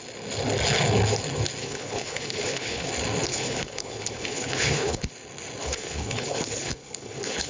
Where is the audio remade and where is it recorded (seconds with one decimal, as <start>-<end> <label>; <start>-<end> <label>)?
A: 0.0-1.6 recorded; 1.6-2.9 remade; 2.9-3.3 recorded; 3.3-5.1 remade; 5.1-5.6 recorded; 5.6-7.5 remade